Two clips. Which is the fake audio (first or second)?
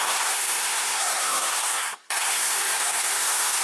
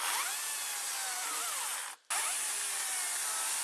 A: first